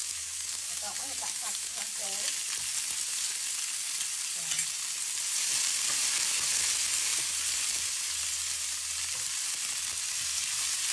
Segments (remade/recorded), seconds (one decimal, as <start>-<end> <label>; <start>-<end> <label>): 0.0-1.8 remade; 1.8-10.9 recorded